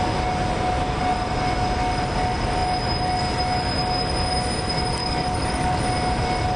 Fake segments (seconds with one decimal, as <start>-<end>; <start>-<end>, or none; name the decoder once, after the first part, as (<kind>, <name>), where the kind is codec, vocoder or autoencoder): 5.0-5.8 (codec, DAC)

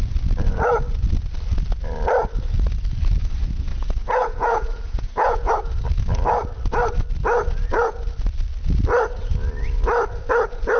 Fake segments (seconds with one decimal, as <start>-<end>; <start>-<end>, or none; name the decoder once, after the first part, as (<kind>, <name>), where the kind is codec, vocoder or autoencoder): 3.7-5.5 (vocoder, Vocos)

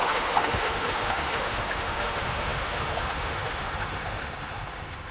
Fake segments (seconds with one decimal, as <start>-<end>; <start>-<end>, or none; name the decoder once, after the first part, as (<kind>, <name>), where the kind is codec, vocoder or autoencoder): 0.0-5.1 (autoencoder, DAC-VAE)

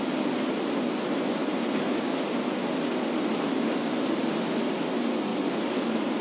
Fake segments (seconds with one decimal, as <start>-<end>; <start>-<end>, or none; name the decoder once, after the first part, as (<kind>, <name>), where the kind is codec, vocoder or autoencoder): none

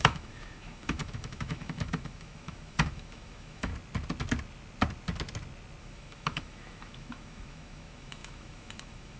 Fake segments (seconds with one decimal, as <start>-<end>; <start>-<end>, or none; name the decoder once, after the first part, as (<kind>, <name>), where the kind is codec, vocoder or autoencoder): 0.0-3.7 (autoencoder, DAC-VAE); 5.8-9.2

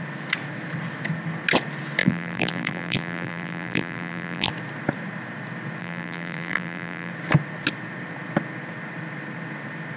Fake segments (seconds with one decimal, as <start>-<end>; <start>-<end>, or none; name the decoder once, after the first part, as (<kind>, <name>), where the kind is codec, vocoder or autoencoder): 2.0-4.5 (vocoder, BigVGAN v2); 5.8-7.1

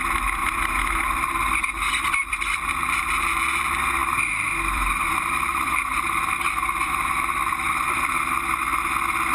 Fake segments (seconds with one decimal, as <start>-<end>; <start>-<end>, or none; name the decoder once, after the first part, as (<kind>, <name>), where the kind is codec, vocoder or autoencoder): 0.4-1.0 (vocoder, BigVGAN v2); 2.1-2.7; 4.0-8.5

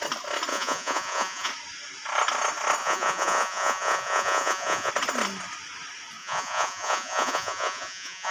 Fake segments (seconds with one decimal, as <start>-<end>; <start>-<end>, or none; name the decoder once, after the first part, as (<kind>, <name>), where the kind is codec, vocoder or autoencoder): 0.5-1.5 (vocoder, Vocos); 2.8-4.9; 6.2-8.3